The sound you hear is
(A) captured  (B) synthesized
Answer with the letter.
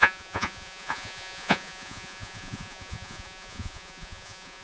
B